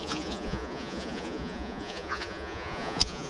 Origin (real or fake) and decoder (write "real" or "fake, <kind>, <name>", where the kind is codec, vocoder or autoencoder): fake, vocoder, Vocos